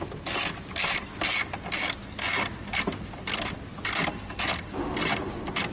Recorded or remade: recorded